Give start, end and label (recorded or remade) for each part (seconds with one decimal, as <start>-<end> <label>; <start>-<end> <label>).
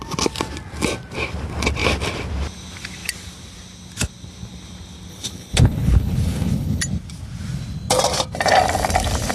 0.0-5.1 recorded; 5.1-6.8 remade; 6.8-9.3 recorded